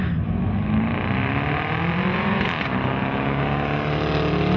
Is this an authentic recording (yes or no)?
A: yes